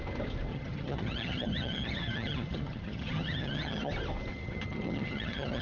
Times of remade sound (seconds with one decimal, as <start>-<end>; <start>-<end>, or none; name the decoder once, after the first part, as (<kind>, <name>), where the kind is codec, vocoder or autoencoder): 0.5-3.9 (vocoder, HiFi-GAN); 4.3-5.6